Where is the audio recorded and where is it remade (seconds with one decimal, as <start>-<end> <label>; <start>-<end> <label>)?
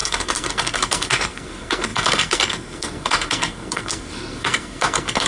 0.0-5.3 remade